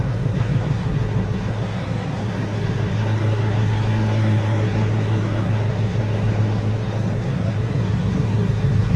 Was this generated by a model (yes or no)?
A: yes